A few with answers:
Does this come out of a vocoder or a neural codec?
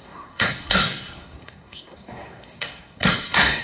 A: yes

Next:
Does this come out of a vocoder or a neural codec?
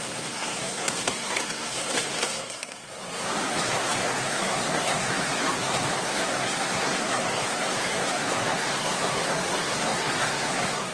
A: yes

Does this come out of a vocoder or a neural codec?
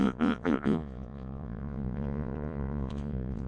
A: yes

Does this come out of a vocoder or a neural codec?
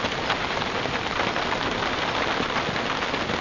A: no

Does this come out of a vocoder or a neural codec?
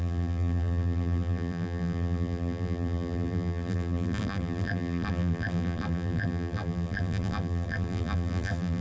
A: yes